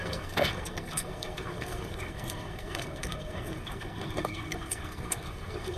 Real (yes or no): no